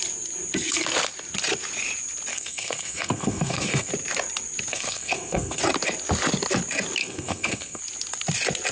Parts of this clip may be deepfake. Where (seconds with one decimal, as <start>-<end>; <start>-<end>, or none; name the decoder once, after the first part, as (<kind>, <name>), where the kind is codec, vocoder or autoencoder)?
2.3-3.9 (codec, SNAC); 4.7-5.6; 7.0-7.8